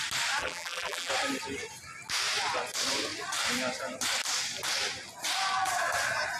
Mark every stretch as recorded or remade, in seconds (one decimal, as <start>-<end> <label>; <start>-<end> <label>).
0.0-0.4 recorded; 0.4-1.1 remade; 1.1-6.4 recorded